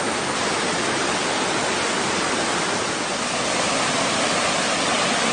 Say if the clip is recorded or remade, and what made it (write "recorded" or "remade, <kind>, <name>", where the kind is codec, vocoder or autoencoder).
recorded